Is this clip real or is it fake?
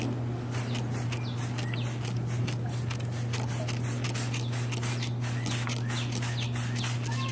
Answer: real